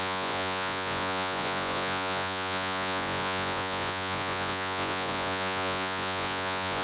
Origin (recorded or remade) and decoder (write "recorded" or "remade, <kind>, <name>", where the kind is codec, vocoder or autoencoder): remade, vocoder, Vocos